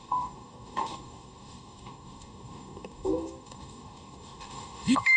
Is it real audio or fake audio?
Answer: fake